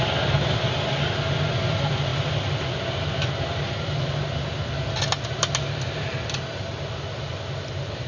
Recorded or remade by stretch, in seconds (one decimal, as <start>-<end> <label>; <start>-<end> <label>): 0.0-8.1 recorded